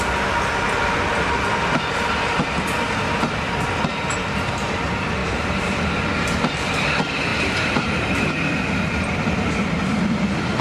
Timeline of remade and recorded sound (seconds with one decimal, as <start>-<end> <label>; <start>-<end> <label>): 0.0-5.2 recorded; 5.2-5.9 remade; 5.9-7.3 recorded; 7.3-8.3 remade; 8.3-10.6 recorded